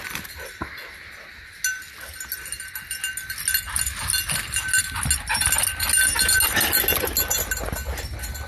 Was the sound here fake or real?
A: real